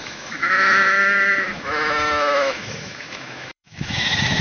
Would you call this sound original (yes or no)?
no